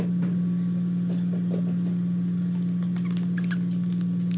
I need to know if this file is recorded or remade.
recorded